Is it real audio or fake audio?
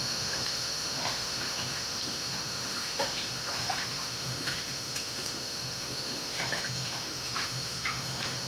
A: fake